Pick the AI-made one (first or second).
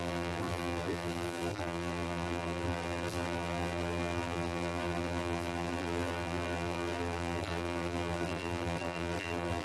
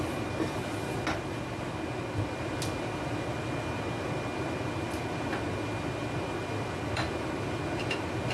first